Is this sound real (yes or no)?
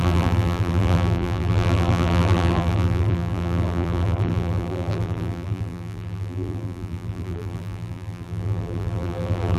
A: no